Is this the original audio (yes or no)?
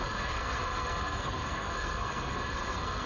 no